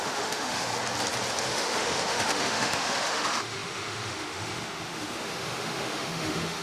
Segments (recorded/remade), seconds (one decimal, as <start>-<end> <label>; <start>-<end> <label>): 0.0-0.7 remade; 0.7-1.4 recorded; 1.4-6.6 remade